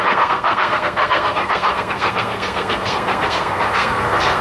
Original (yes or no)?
no